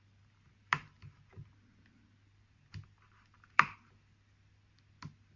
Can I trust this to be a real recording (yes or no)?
no